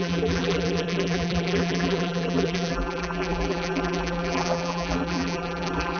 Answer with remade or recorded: remade